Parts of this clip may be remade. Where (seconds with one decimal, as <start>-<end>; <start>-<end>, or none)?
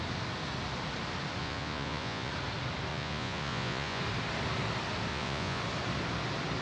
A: 1.4-2.3; 2.9-4.0; 5.1-5.6